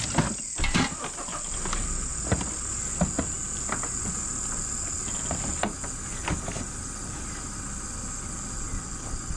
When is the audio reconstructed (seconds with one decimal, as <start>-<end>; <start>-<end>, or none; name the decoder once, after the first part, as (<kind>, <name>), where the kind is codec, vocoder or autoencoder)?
none